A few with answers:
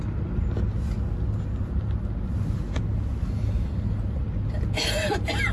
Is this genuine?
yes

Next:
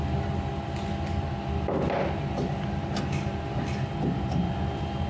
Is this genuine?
yes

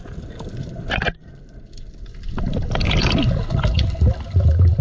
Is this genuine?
yes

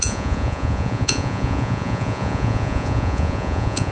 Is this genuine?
no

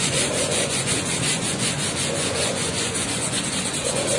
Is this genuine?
no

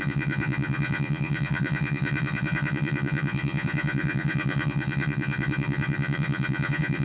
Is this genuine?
no